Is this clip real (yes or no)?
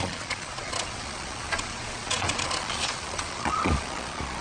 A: no